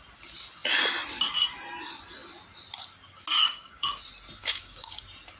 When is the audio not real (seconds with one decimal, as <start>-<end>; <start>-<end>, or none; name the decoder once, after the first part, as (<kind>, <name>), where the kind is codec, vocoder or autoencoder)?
3.4-4.0 (codec, DAC); 4.4-5.0